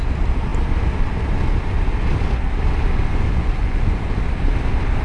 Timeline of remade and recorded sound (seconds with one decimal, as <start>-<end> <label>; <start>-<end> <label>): 0.0-3.1 recorded; 3.1-4.1 remade; 4.1-5.0 recorded